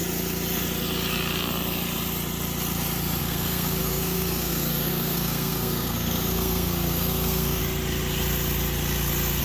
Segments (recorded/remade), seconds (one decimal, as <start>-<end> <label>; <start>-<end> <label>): 0.0-3.2 recorded; 3.2-7.6 remade; 7.6-9.4 recorded